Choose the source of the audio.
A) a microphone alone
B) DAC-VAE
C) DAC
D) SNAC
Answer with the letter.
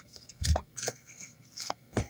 D